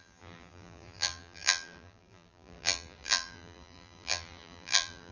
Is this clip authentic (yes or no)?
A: no